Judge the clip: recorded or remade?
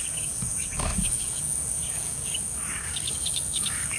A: remade